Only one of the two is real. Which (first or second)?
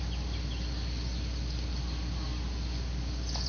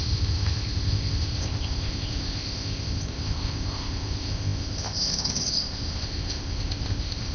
first